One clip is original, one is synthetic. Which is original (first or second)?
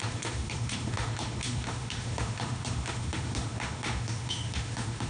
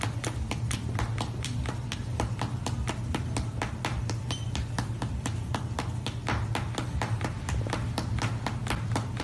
second